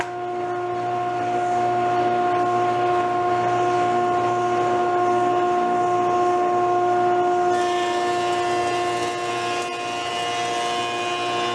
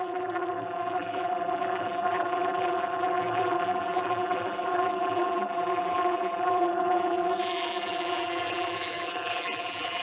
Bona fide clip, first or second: first